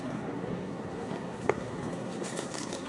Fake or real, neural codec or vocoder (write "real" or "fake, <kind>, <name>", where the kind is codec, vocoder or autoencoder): fake, codec, SNAC